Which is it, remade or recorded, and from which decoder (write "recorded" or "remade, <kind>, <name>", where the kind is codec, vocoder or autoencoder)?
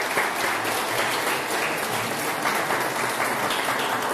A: recorded